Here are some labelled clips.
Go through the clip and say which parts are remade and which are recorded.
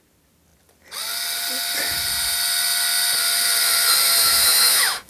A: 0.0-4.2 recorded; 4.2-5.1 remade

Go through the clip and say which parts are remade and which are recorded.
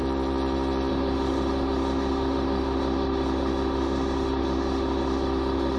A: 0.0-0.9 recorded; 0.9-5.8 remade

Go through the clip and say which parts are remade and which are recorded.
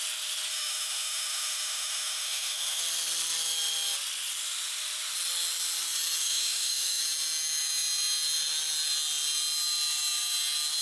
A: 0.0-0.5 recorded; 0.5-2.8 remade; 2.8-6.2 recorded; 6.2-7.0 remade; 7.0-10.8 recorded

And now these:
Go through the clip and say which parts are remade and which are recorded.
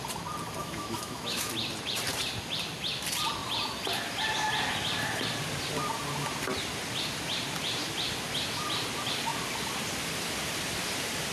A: 0.0-0.6 recorded; 0.6-1.5 remade; 1.5-11.3 recorded